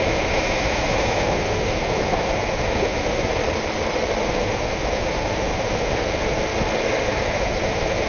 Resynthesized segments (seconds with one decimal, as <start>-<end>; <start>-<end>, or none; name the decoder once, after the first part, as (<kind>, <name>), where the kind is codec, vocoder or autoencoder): 0.0-3.4 (autoencoder, DAC-VAE); 4.2-6.5; 7.0-8.1